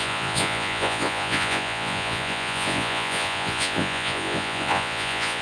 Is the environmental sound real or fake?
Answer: fake